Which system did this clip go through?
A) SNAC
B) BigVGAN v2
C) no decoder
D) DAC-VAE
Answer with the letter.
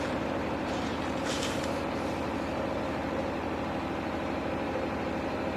B